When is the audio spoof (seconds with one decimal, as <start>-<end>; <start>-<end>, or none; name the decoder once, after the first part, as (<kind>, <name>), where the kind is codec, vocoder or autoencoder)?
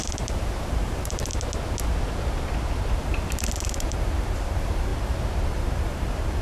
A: 0.0-1.3 (vocoder, BigVGAN v2); 2.9-4.9; 5.5-6.4